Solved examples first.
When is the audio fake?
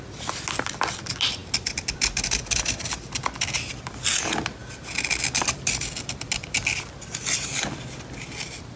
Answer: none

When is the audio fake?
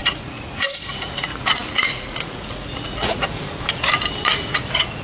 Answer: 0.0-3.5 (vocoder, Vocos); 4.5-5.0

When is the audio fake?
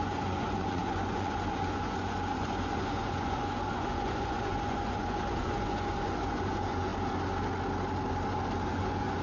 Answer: 0.0-6.9 (vocoder, Vocos); 8.7-9.2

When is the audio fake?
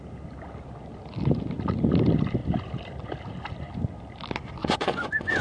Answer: 4.6-5.4 (vocoder, Vocos)